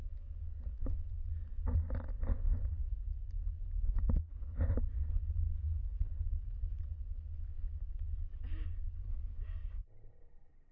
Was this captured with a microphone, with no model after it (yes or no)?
yes